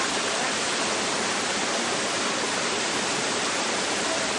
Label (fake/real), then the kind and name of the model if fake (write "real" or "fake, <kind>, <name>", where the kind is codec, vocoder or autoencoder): real